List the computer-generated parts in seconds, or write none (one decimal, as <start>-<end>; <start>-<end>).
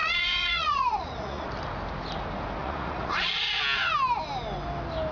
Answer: 0.0-1.5; 2.6-3.3